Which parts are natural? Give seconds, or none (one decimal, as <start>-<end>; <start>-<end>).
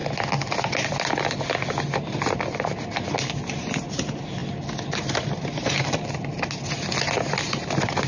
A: 0.0-8.1